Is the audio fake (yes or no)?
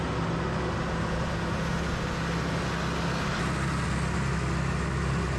no